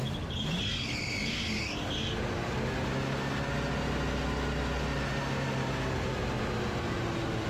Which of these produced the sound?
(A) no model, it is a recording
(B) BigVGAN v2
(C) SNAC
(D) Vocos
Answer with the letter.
A